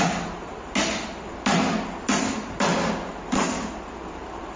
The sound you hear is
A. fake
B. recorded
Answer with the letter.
B